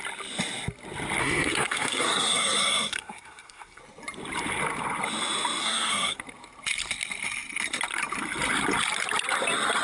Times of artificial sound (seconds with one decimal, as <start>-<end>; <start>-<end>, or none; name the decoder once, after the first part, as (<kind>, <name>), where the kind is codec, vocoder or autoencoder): 1.2-3.8 (codec, SNAC); 5.6-6.2